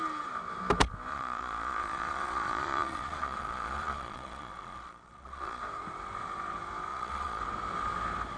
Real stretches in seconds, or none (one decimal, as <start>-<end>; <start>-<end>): 0.0-1.1; 5.6-6.9; 7.4-8.4